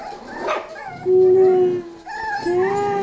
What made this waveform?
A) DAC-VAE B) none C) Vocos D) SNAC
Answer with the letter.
B